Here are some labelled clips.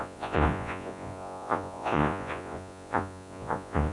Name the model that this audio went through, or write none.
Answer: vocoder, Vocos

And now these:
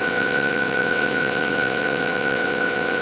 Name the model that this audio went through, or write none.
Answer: vocoder, WaveNeXt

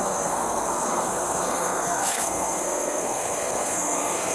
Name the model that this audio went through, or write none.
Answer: codec, SNAC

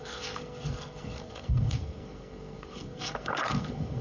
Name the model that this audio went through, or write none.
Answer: codec, SNAC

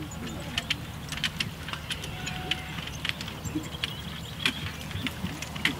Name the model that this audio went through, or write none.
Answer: none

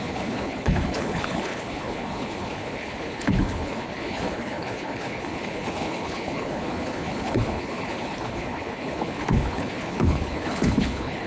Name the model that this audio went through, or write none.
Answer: codec, HILCodec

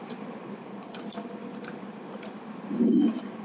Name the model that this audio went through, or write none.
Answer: none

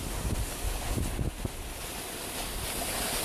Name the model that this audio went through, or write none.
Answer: none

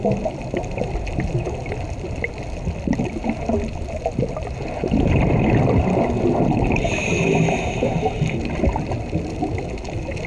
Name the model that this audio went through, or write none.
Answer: none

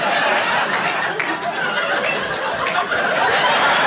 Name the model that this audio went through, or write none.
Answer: none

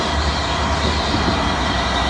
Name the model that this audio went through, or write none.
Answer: none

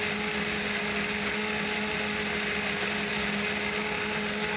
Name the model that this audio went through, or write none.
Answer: none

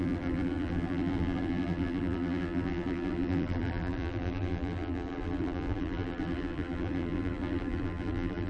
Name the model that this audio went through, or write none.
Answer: vocoder, BigVGAN v2